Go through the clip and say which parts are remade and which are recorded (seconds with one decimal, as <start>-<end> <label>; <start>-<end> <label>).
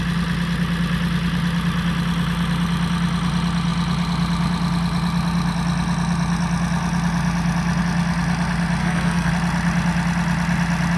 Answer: 0.0-8.8 recorded; 8.8-9.3 remade; 9.3-11.0 recorded